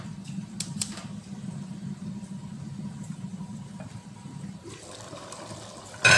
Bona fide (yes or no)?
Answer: yes